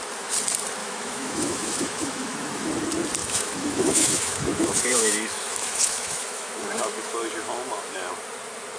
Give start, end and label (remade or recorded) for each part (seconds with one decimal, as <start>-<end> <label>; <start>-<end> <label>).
0.0-0.8 recorded; 0.8-2.7 remade; 2.7-3.2 recorded; 3.2-8.1 remade; 8.1-8.8 recorded